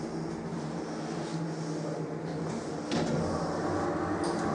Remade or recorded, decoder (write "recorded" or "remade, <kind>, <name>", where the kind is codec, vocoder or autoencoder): recorded